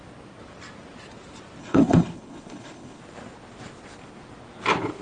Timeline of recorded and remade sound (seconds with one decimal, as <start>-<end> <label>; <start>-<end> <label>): 0.0-1.6 recorded; 1.6-3.0 remade; 3.0-5.0 recorded